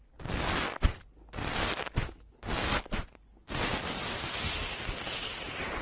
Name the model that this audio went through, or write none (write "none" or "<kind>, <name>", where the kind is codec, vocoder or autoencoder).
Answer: none